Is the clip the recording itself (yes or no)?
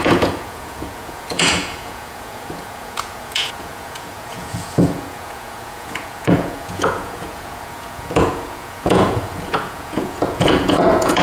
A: no